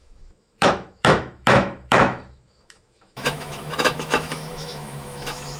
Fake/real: fake